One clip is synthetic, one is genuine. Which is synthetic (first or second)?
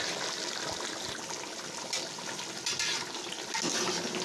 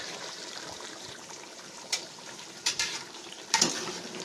second